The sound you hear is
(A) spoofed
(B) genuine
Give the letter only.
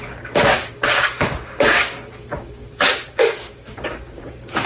A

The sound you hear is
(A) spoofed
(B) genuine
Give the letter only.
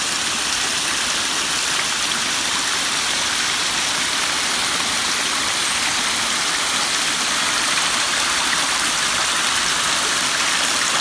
B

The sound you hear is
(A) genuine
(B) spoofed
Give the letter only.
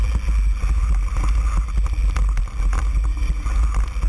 A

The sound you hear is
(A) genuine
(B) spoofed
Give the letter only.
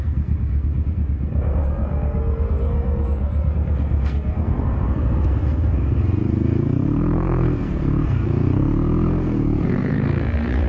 B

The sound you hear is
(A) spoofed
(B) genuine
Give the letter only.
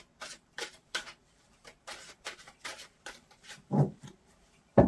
A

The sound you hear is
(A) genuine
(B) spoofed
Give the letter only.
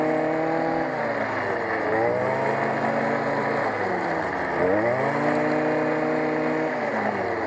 A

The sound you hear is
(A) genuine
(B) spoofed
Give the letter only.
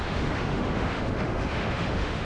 B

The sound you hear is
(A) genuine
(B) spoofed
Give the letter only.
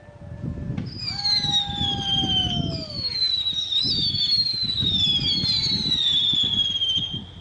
A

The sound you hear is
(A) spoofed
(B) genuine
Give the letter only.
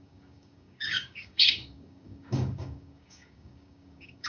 A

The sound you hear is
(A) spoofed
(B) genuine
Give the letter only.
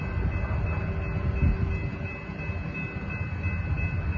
B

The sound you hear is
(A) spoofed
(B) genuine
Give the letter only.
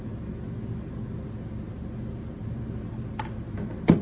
B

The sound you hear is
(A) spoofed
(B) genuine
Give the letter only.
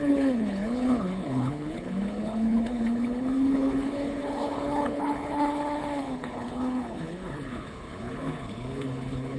A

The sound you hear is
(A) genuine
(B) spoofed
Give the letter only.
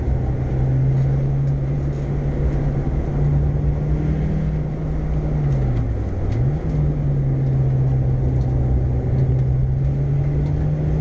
A